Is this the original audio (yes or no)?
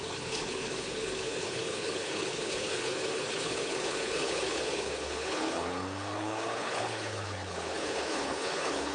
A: no